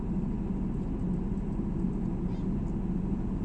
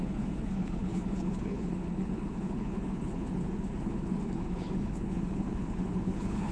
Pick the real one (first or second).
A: first